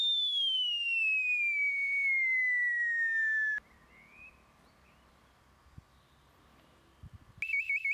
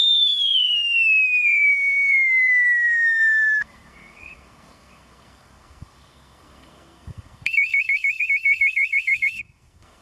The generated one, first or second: second